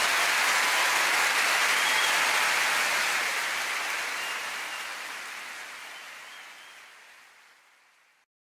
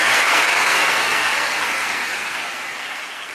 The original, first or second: first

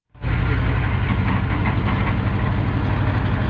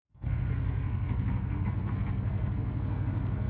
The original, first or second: first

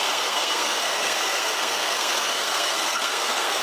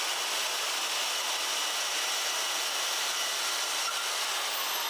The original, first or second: second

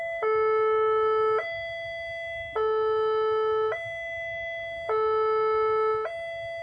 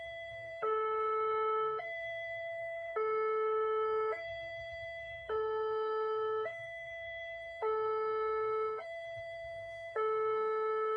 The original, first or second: first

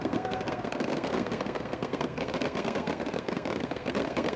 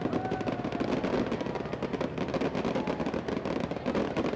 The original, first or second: second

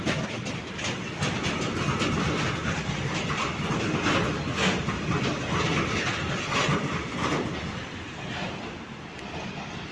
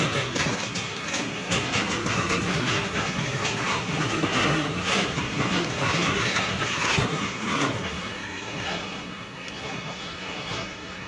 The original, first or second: first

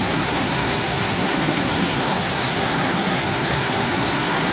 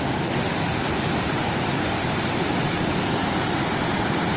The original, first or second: second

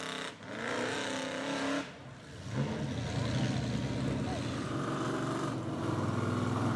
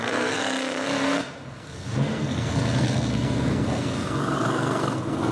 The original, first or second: first